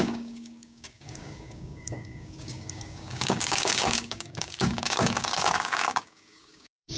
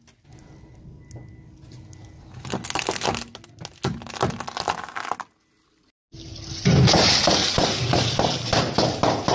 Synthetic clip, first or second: first